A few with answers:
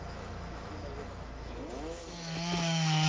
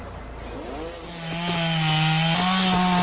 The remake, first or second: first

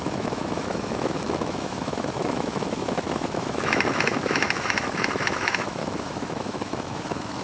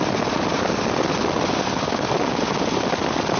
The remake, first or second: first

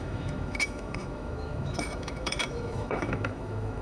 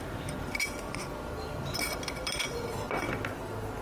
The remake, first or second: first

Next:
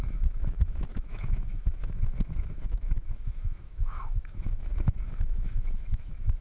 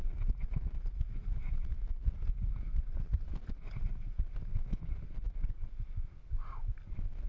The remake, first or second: first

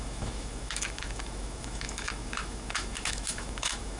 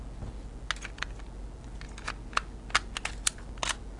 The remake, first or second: first